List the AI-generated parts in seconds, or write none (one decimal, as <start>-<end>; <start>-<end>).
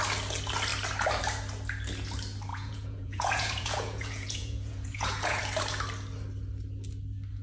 2.5-5.4